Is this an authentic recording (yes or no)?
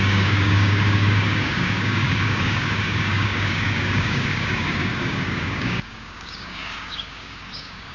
no